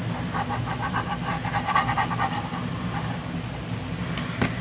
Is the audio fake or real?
real